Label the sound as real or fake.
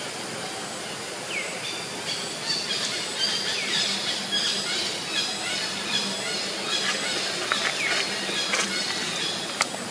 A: real